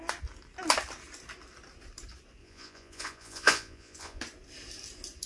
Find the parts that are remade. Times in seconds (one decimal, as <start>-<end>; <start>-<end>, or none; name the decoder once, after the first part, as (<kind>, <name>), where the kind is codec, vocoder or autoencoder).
2.4-4.2 (vocoder, Vocos)